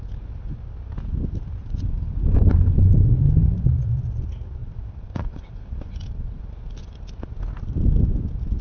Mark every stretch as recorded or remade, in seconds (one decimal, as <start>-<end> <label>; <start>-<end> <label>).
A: 0.0-1.6 recorded; 1.6-3.1 remade; 3.1-4.6 recorded; 4.6-6.4 remade; 6.4-8.6 recorded